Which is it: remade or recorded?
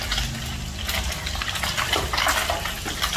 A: recorded